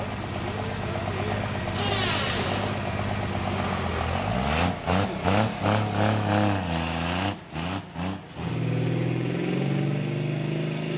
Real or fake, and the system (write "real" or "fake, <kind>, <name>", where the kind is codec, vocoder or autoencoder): real